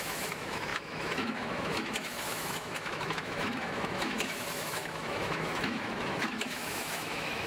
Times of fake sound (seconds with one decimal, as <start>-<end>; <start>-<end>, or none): 0.0-7.5